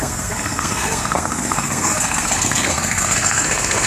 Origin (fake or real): fake